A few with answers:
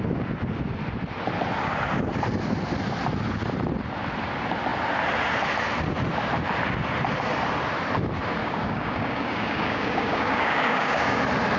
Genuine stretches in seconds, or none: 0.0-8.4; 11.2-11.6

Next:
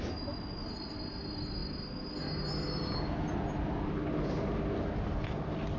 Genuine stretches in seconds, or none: 0.0-5.8

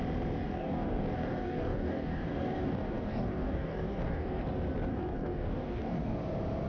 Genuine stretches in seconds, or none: 0.0-0.4; 4.4-4.9; 6.2-6.7

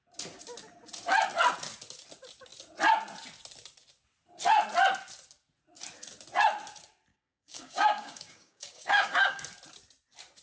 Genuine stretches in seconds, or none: 0.0-7.1; 9.4-10.4

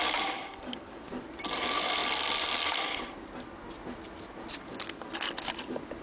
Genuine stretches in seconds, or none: 0.0-0.4; 1.0-6.0

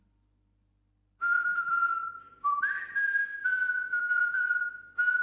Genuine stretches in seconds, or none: 0.0-1.5; 2.6-3.3; 4.3-5.2

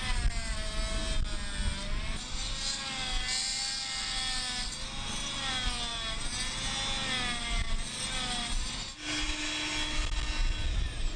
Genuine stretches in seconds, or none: 0.0-11.2

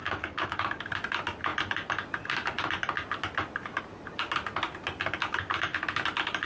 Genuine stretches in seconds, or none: 0.8-6.5